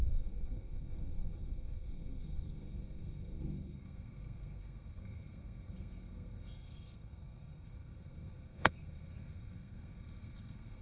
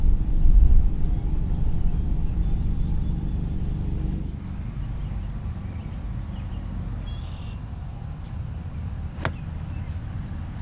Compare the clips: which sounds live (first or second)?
second